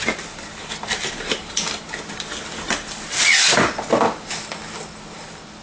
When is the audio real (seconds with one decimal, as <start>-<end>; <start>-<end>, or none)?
0.0-5.6